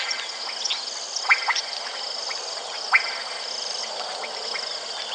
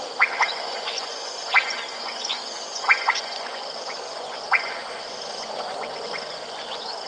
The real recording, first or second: first